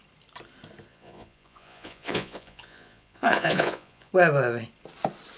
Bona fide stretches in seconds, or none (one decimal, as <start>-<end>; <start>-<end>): 0.0-0.9; 4.1-5.4